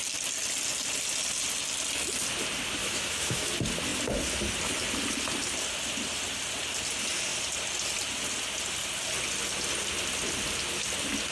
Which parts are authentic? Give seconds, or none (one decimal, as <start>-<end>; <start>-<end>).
0.0-2.8; 3.5-11.3